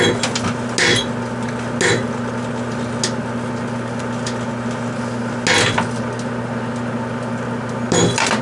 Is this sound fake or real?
real